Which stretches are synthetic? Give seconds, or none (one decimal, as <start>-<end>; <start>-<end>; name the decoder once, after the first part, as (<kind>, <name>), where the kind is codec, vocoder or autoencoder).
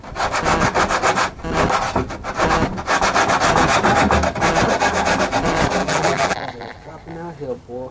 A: 5.8-6.9 (vocoder, BigVGAN v2)